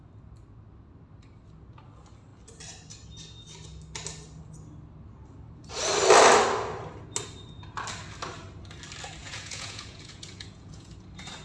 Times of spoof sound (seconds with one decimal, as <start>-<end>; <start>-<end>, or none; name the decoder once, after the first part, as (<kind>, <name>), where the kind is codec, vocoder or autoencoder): 9.2-10.9 (vocoder, Vocos)